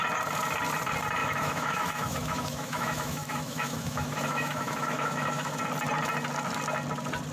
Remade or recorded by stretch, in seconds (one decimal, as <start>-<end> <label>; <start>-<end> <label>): 0.0-1.2 recorded; 1.2-5.6 remade; 5.6-7.3 recorded